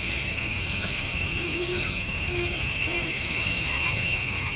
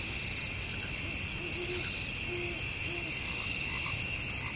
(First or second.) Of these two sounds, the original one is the second